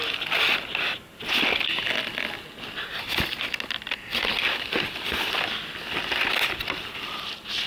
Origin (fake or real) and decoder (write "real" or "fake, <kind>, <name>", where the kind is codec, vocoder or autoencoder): real